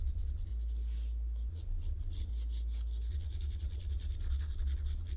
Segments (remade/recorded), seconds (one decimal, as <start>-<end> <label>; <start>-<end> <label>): 0.0-0.5 remade; 0.5-1.5 recorded; 1.5-2.3 remade; 2.3-3.1 recorded; 3.1-5.2 remade